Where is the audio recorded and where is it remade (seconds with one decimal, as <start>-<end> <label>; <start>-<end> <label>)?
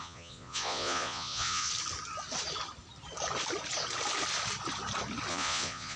0.0-1.7 remade; 1.7-5.3 recorded; 5.3-6.0 remade